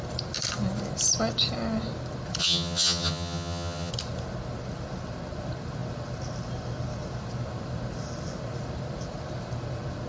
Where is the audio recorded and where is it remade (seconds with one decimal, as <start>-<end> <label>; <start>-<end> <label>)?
0.0-2.4 recorded; 2.4-3.9 remade; 3.9-10.1 recorded